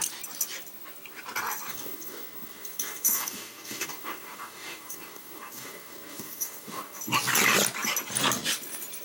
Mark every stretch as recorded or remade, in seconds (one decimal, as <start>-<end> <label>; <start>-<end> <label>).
0.0-1.7 recorded; 1.7-7.0 remade; 7.0-9.0 recorded